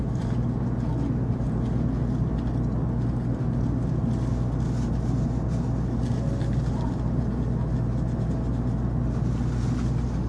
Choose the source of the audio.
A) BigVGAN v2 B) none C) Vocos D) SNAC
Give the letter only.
B